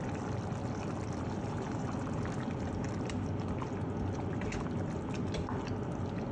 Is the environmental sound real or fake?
real